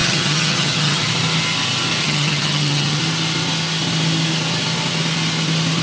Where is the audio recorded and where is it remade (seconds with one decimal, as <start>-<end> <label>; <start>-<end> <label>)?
0.0-1.1 remade; 1.1-2.0 recorded; 2.0-3.0 remade; 3.0-5.8 recorded